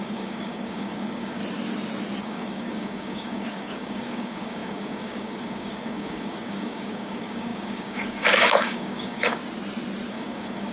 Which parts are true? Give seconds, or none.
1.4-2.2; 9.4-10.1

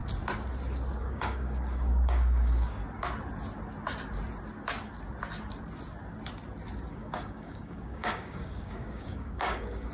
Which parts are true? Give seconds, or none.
0.0-1.0; 2.8-6.9